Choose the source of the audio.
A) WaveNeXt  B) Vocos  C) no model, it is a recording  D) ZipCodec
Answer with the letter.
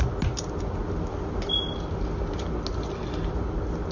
C